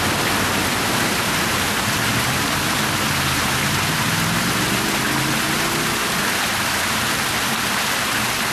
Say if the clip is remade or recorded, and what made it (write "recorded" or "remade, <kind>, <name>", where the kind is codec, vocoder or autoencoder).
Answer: recorded